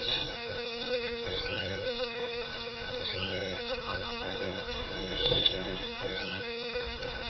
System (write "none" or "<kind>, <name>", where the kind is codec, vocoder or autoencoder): codec, SNAC